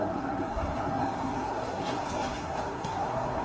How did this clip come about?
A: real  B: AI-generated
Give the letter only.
B